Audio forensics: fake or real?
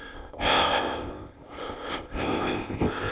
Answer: fake